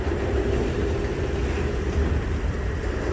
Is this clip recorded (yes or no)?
yes